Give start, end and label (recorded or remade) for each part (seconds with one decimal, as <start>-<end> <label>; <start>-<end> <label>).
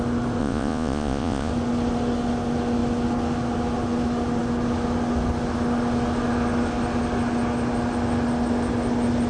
0.0-0.4 recorded; 0.4-1.5 remade; 1.5-9.3 recorded